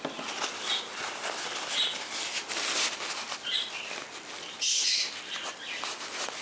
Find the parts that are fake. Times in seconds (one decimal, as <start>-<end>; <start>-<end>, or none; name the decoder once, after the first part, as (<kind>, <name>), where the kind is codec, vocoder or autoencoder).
none